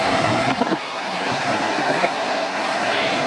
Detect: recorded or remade remade